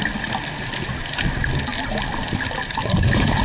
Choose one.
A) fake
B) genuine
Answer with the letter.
B